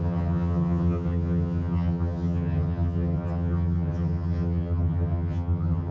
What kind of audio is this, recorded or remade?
remade